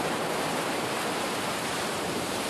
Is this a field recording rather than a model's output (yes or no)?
no